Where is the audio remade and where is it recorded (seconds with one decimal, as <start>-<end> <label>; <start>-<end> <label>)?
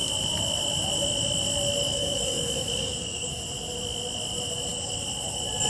0.0-1.9 recorded; 1.9-3.4 remade; 3.4-5.7 recorded